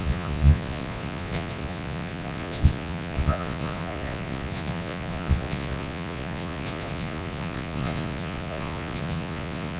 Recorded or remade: remade